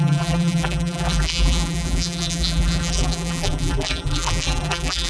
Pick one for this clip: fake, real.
fake